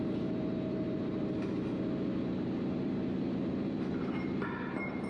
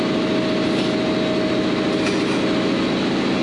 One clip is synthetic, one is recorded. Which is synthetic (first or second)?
first